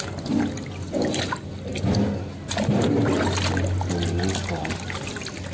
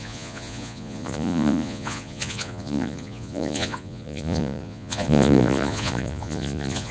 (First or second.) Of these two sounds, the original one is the first